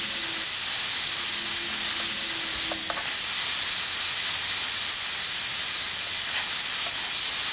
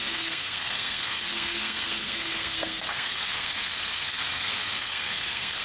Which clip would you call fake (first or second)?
second